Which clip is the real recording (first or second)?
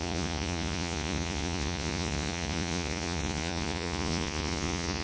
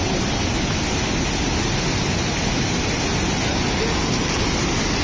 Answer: second